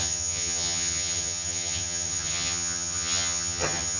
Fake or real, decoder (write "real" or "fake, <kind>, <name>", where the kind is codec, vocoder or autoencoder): fake, vocoder, HiFi-GAN